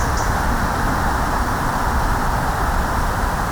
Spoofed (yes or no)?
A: no